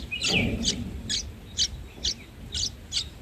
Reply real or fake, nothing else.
real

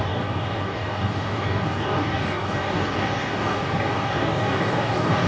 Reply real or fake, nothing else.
fake